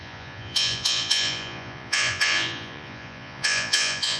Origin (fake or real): fake